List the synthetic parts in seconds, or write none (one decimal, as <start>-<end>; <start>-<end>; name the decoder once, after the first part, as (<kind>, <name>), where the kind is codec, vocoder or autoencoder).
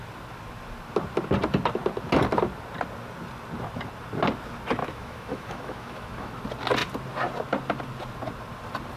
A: 4.8-6.3 (autoencoder, DAC-VAE)